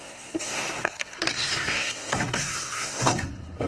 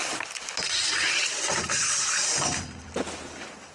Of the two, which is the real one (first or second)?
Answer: second